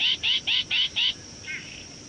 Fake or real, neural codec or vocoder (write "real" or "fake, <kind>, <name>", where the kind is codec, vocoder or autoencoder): real